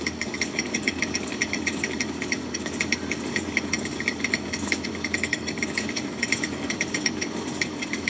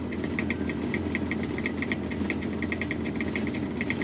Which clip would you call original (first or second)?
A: second